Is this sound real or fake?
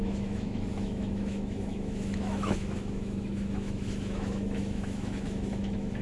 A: fake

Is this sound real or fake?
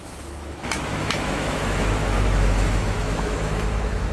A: fake